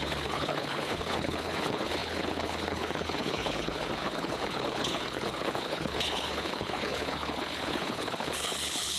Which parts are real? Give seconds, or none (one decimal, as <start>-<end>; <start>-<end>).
none